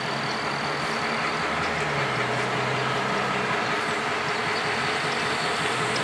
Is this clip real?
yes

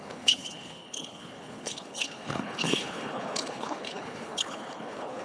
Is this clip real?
no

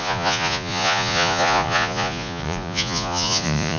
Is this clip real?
no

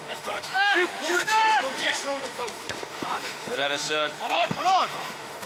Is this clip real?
no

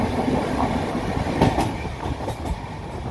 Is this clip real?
yes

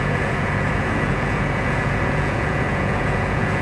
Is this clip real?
no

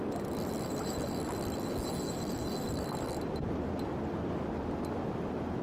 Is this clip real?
yes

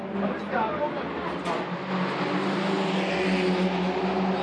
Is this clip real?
yes